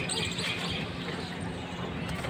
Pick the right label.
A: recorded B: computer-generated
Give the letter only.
A